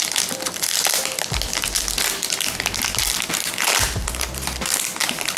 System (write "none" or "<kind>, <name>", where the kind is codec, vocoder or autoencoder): vocoder, BigVGAN v2